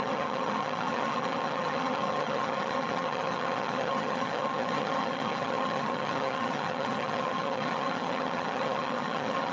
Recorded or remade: remade